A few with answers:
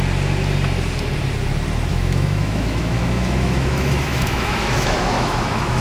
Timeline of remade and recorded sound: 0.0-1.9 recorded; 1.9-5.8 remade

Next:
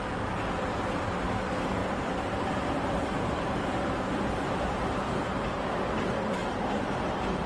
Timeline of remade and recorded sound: 0.0-1.8 recorded; 1.8-5.3 remade; 5.3-6.4 recorded; 6.4-7.1 remade; 7.1-7.5 recorded

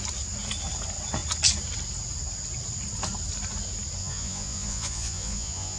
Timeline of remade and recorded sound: 0.0-4.0 recorded; 4.0-5.8 remade

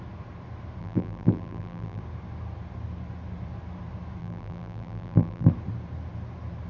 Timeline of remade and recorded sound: 0.0-0.8 recorded; 0.8-2.0 remade; 2.0-4.2 recorded; 4.2-5.5 remade; 5.5-6.7 recorded

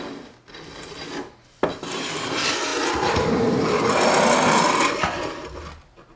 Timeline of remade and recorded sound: 0.0-6.2 recorded

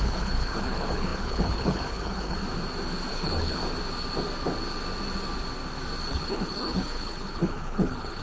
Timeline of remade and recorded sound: 0.0-2.4 remade; 2.4-3.1 recorded; 3.1-3.6 remade; 3.6-6.1 recorded; 6.1-8.2 remade